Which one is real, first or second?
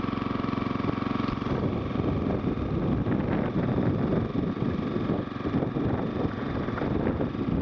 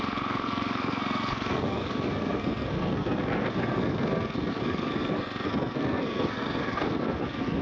first